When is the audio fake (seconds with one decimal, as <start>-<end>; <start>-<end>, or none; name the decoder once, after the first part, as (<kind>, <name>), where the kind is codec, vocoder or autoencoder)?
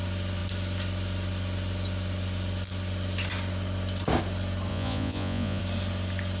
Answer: 4.7-5.6 (vocoder, Vocos)